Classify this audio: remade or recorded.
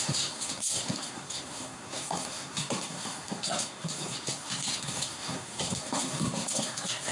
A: remade